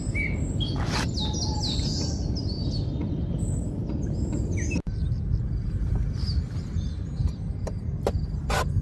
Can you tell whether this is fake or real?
real